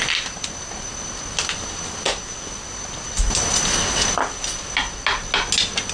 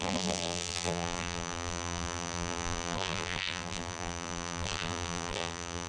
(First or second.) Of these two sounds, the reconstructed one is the second